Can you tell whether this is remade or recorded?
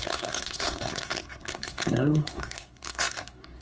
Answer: remade